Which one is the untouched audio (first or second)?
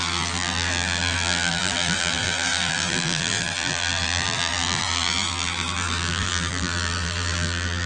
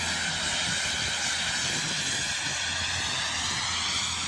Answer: second